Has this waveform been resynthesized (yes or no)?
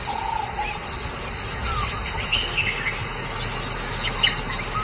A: no